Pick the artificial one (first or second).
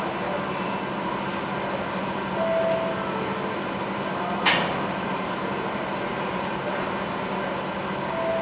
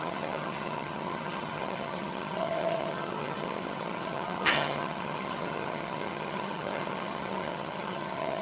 second